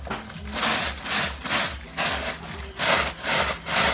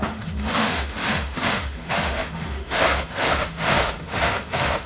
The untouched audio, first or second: first